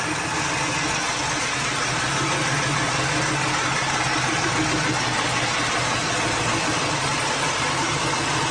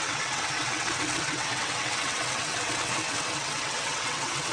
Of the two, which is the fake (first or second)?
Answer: second